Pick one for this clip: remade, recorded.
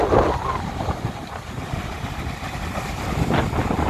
recorded